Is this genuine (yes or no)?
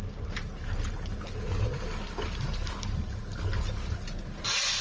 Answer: yes